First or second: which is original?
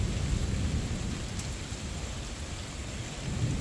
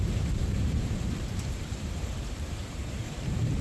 first